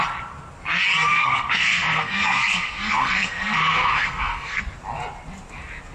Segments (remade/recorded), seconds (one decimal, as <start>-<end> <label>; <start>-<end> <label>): 0.0-1.1 recorded; 1.1-4.6 remade; 4.6-5.9 recorded